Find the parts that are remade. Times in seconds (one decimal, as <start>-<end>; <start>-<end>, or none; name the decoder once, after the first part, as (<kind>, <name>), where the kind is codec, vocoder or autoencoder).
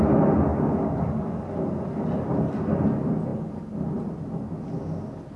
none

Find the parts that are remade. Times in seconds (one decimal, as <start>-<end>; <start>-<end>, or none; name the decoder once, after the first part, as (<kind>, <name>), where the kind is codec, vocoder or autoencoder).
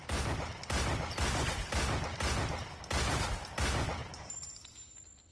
none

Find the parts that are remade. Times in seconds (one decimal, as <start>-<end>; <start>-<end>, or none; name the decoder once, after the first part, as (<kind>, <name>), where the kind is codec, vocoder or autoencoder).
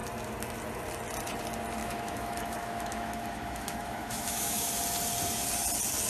1.8-4.7 (autoencoder, DAC-VAE)